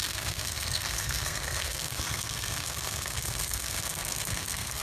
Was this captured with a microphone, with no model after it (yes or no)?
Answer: no